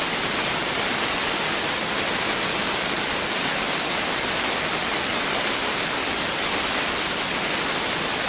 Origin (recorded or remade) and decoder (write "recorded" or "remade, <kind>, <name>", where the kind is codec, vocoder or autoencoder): recorded